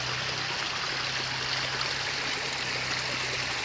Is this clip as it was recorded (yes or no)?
yes